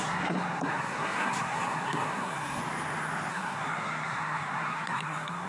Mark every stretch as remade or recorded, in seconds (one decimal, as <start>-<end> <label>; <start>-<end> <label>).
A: 0.0-2.6 remade; 2.6-3.3 recorded; 3.3-5.5 remade